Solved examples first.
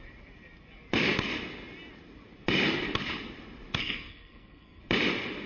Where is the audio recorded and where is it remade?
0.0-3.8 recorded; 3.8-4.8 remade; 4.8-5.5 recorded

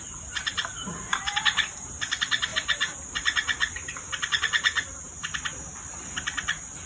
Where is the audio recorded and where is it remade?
0.0-6.9 recorded

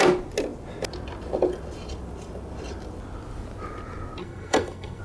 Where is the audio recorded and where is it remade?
0.0-4.2 recorded; 4.2-5.0 remade

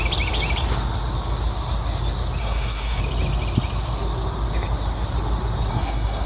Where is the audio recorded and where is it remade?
0.0-2.4 recorded; 2.4-3.0 remade; 3.0-5.7 recorded; 5.7-6.3 remade